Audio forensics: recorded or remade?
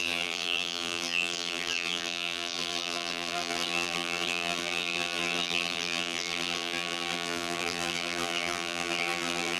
remade